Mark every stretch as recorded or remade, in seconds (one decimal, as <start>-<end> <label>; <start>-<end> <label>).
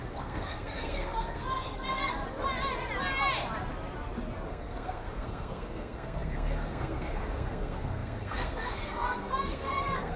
0.0-2.2 remade; 2.2-4.5 recorded; 4.5-10.2 remade